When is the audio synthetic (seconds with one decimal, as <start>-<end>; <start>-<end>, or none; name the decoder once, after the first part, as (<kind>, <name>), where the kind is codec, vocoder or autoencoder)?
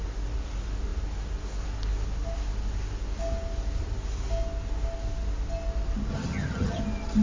6.1-6.8 (vocoder, HiFi-GAN)